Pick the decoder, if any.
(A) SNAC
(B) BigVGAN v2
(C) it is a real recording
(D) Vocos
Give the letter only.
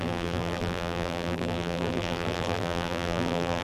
B